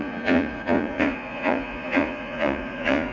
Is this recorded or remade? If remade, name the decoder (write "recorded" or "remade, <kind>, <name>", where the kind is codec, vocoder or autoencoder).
remade, vocoder, Vocos